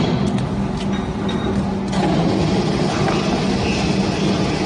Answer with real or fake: real